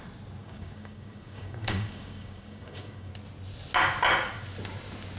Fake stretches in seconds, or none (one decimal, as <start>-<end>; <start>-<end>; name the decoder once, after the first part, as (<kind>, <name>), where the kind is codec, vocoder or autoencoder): 0.4-3.1 (codec, DAC)

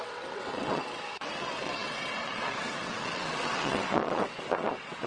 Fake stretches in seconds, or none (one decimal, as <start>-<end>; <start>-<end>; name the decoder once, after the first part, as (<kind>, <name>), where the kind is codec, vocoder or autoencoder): 0.0-5.1 (vocoder, WaveNeXt)

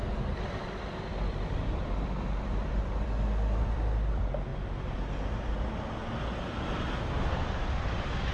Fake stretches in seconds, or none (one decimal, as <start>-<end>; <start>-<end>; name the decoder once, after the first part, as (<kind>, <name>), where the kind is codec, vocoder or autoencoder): 1.1-4.1 (vocoder, BigVGAN v2)